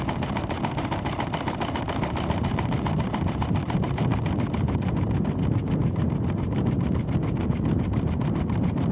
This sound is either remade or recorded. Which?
remade